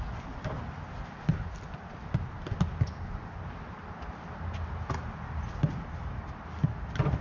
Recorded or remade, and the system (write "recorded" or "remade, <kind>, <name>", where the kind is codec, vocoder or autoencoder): recorded